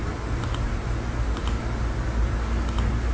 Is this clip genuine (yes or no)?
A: yes